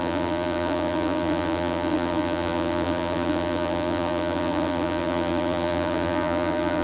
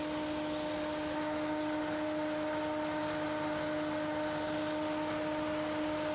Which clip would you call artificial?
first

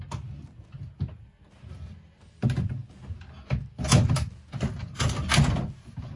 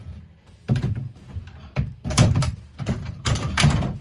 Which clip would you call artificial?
second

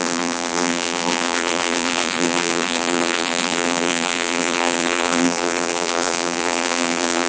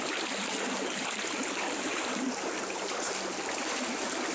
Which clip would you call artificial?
first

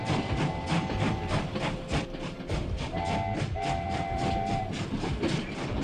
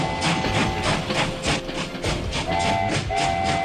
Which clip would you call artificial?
first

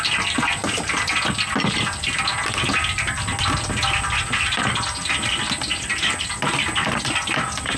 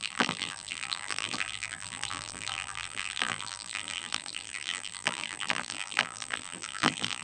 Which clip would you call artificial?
second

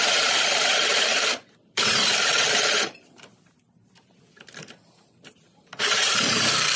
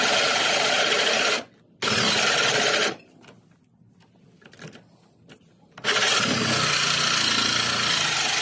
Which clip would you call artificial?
first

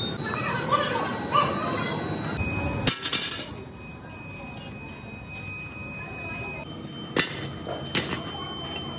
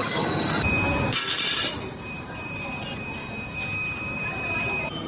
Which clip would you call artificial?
second